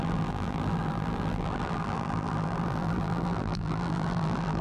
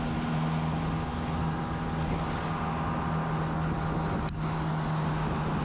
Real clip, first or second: second